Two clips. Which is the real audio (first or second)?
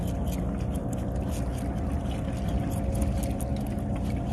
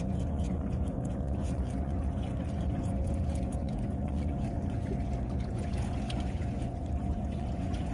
first